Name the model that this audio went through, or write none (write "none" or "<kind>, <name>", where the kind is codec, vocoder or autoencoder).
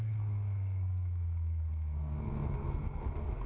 codec, SNAC